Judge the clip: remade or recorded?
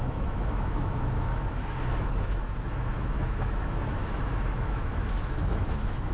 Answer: remade